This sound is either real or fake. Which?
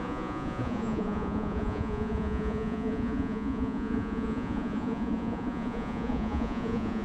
fake